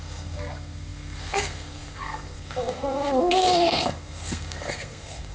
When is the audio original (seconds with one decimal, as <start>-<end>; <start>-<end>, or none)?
none